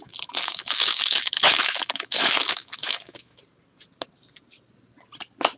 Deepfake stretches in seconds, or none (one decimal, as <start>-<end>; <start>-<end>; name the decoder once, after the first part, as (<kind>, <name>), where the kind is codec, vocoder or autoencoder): 0.0-3.4 (autoencoder, DAC-VAE)